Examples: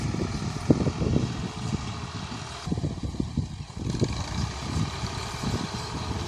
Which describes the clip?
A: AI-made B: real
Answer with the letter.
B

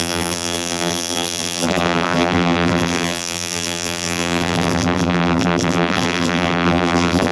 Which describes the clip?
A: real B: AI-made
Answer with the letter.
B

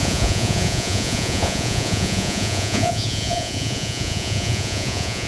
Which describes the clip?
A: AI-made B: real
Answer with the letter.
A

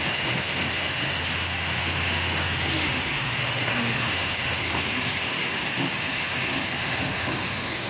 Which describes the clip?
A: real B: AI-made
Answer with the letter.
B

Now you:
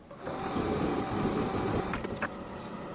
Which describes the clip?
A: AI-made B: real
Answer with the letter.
B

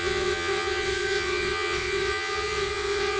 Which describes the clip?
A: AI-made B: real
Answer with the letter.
A